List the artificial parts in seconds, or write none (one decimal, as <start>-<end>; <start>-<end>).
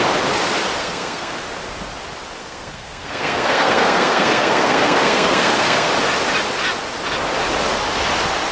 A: 0.8-1.4; 2.4-5.9